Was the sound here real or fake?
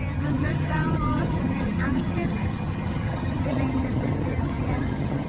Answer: fake